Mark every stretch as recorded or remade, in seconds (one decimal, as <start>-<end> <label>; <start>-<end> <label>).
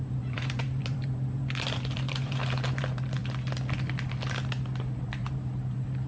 0.0-3.2 remade; 3.2-4.8 recorded; 4.8-6.1 remade